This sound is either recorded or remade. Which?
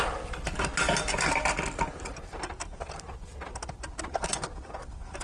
recorded